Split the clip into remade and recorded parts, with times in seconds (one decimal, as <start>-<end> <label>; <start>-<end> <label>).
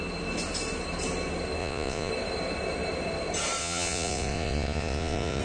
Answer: 0.0-1.6 recorded; 1.6-2.1 remade; 2.1-3.6 recorded; 3.6-5.4 remade